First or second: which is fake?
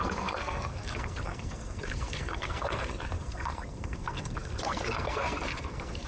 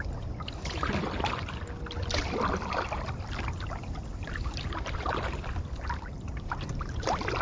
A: first